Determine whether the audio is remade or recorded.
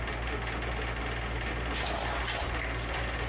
recorded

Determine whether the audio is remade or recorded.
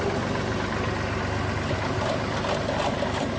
recorded